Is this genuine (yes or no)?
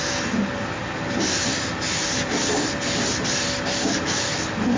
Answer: yes